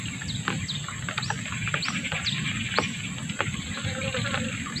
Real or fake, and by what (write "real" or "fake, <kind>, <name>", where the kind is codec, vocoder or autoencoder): real